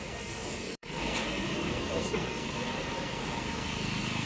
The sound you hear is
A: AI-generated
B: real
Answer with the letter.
A